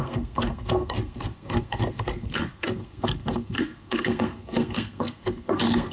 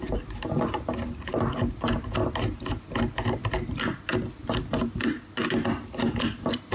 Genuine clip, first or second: second